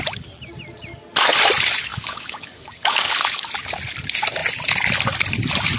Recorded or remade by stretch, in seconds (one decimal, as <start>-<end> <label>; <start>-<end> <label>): 0.0-1.9 recorded; 1.9-3.2 remade; 3.2-5.8 recorded

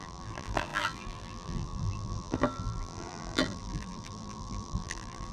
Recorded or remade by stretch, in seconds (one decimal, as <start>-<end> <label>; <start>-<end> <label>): 0.0-5.3 remade

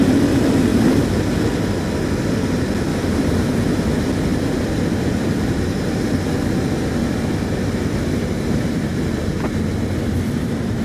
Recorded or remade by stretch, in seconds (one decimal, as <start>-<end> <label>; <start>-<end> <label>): 0.0-0.7 recorded; 0.7-1.4 remade; 1.4-2.9 recorded; 2.9-3.5 remade; 3.5-4.3 recorded; 4.3-6.2 remade; 6.2-7.0 recorded; 7.0-9.3 remade; 9.3-10.8 recorded

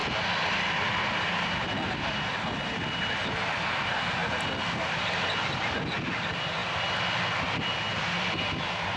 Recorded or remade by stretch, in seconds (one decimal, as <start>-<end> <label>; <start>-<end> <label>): 0.0-9.0 recorded

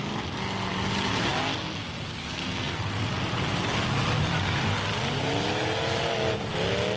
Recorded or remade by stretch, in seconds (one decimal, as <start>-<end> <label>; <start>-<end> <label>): 0.0-2.2 recorded; 2.2-2.8 remade; 2.8-7.0 recorded

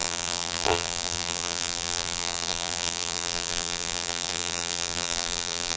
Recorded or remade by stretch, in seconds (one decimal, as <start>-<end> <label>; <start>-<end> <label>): 0.0-5.8 remade

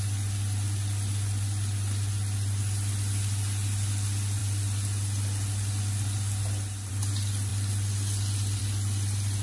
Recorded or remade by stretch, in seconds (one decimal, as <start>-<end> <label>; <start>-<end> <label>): 0.0-9.4 recorded